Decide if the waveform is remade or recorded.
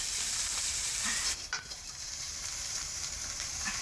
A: remade